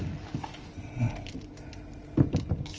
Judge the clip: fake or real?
real